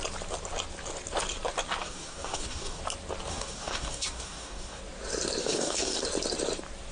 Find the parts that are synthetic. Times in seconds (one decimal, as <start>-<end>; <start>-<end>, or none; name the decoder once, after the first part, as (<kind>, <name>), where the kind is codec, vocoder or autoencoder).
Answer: 1.8-2.8 (codec, DAC); 3.3-4.8; 5.4-6.0